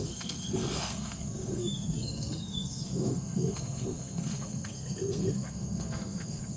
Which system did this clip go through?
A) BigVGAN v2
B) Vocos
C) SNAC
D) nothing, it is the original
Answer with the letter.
C